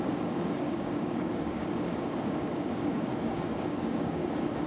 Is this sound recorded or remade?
remade